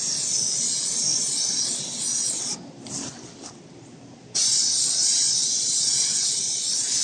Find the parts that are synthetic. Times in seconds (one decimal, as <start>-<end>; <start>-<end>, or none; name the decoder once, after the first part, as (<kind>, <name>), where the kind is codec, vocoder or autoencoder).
5.4-6.4 (vocoder, WaveNeXt)